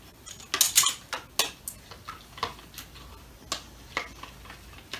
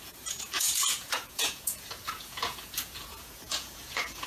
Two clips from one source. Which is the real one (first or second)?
first